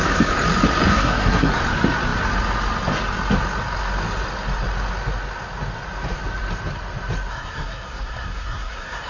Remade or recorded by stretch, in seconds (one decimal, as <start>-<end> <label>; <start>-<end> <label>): 0.0-0.9 recorded; 0.9-1.5 remade; 1.5-7.3 recorded; 7.3-9.1 remade